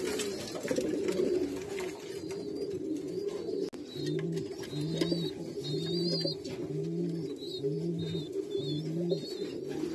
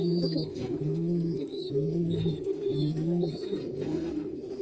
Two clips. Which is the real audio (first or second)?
first